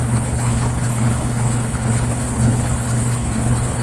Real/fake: fake